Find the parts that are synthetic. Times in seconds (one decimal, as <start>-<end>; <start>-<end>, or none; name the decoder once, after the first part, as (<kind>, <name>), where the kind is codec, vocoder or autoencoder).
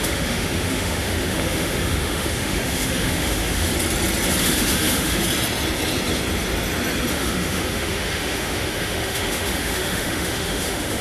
0.0-3.7 (autoencoder, DAC-VAE); 4.4-5.2; 7.1-11.0